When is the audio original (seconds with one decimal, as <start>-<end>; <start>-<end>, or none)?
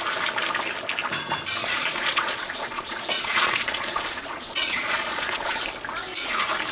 0.0-1.6; 5.6-6.7